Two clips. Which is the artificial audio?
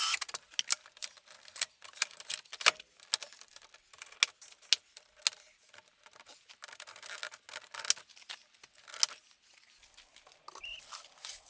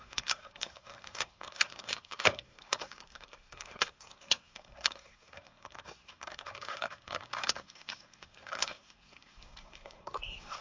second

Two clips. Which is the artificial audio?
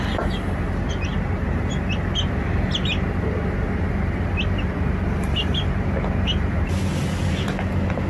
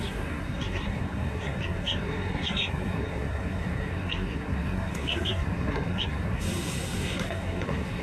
second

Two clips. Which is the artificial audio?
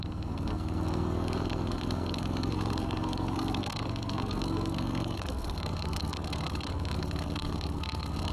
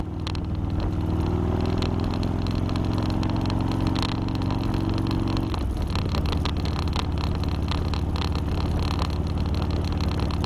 first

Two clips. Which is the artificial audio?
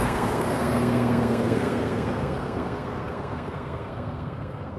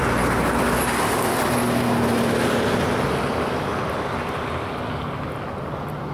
first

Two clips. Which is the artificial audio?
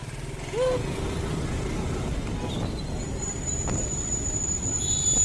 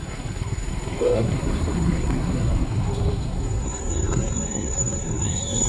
second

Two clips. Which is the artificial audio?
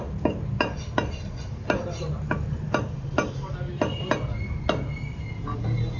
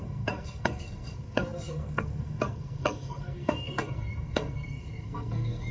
second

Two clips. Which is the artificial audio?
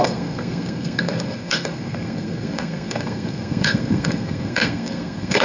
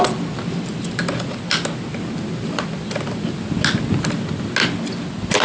first